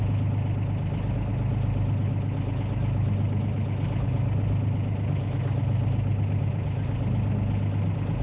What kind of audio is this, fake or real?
real